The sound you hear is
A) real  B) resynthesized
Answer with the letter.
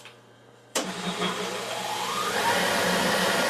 B